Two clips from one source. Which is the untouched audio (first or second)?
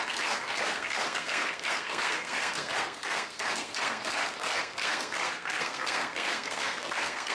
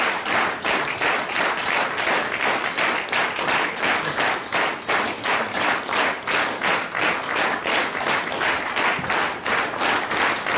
second